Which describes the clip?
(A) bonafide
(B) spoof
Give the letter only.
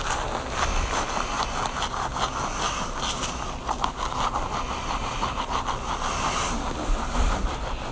A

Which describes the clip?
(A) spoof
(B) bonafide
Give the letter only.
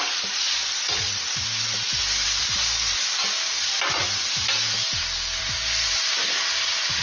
B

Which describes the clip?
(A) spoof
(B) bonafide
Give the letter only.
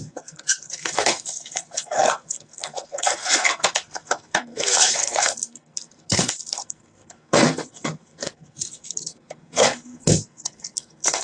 A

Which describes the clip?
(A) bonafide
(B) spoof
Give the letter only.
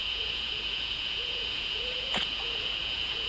B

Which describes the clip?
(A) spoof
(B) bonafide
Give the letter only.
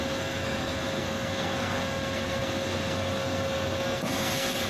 A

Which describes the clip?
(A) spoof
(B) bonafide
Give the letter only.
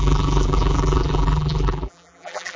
A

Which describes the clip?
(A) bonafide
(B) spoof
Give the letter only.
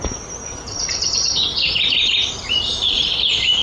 A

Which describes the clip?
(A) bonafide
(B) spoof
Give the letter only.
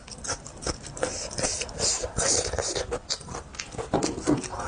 A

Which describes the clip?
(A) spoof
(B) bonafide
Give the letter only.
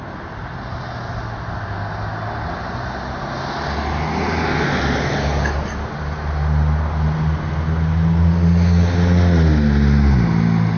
B